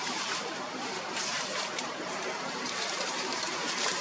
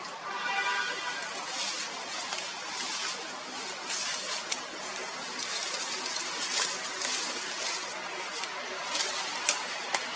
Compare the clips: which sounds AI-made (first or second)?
first